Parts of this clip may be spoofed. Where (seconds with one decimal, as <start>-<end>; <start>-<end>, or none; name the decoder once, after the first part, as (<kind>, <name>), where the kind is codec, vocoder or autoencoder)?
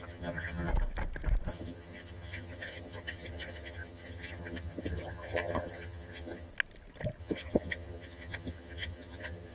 0.0-0.7 (vocoder, HiFi-GAN); 1.5-6.5; 7.2-9.5